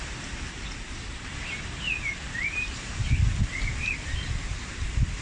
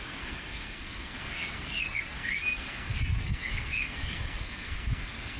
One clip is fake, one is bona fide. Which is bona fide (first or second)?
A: first